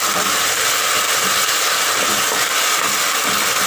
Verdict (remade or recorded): recorded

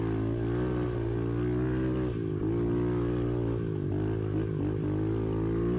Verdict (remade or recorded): recorded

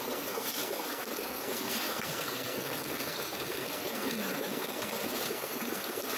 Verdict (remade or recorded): remade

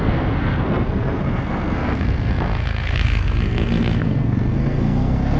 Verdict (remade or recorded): remade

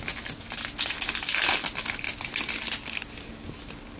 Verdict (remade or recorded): recorded